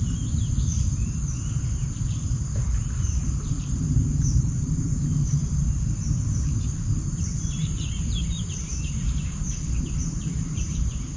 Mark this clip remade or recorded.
remade